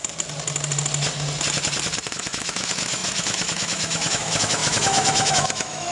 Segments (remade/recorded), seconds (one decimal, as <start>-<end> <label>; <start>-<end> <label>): 0.0-2.1 recorded; 2.1-5.9 remade